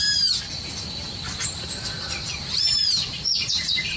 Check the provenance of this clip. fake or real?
real